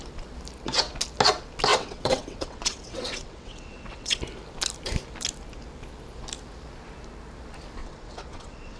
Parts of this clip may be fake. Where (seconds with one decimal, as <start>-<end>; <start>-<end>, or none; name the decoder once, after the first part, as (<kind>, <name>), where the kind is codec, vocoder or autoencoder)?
1.7-4.2 (vocoder, WaveNeXt); 7.8-8.8